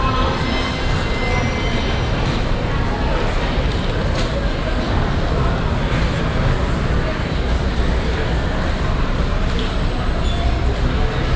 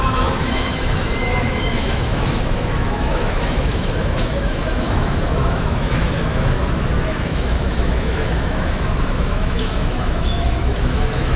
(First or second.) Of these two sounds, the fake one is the second